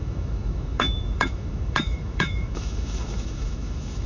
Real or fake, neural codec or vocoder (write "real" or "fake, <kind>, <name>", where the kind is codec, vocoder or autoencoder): fake, autoencoder, DAC-VAE